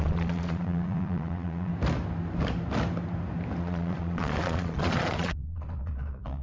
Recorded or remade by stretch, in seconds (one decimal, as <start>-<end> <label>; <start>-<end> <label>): 0.0-1.7 remade; 1.7-3.6 recorded; 3.6-6.4 remade